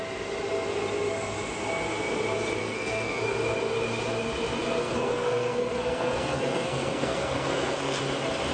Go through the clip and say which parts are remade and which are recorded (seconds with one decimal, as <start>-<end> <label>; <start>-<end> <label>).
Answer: 0.0-2.6 recorded; 2.6-3.2 remade; 3.2-4.8 recorded; 4.8-8.0 remade; 8.0-8.5 recorded